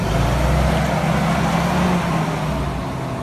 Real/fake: real